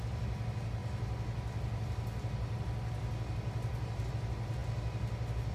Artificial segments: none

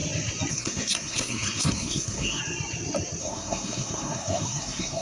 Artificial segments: 0.5-2.4 (codec, SNAC); 3.2-5.0